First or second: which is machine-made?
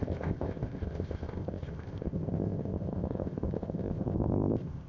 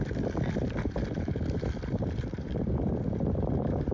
first